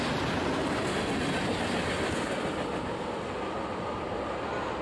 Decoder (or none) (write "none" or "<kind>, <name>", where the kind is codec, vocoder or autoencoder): none